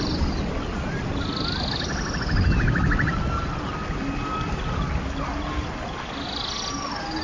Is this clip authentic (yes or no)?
yes